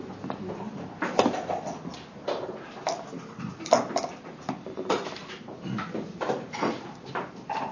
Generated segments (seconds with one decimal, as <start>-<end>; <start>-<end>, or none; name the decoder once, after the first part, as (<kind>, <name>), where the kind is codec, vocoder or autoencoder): 0.0-1.9 (vocoder, BigVGAN v2); 4.3-7.7